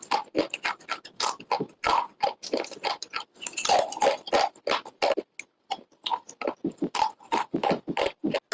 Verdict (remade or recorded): recorded